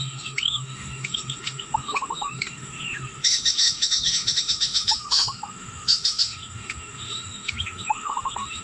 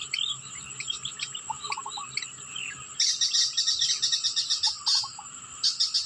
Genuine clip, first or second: second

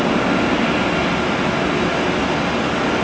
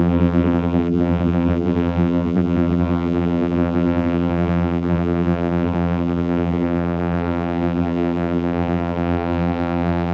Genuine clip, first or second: first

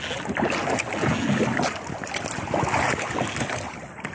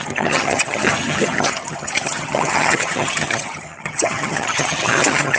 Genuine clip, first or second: first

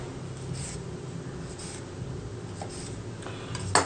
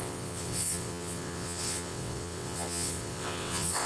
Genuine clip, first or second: first